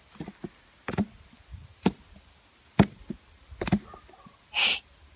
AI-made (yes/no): no